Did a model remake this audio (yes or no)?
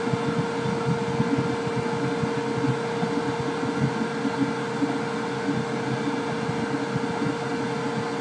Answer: no